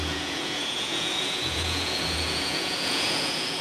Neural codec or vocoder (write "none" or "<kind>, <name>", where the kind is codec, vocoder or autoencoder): vocoder, Vocos